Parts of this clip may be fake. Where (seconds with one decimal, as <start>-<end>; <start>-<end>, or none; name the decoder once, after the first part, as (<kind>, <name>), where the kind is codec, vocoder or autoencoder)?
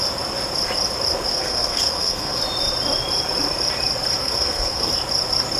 1.3-2.4 (codec, SNAC); 4.2-4.9